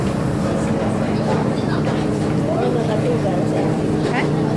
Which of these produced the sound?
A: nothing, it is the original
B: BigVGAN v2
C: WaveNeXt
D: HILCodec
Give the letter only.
B